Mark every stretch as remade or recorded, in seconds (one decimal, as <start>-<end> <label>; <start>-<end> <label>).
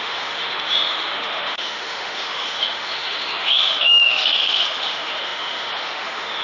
0.0-6.4 remade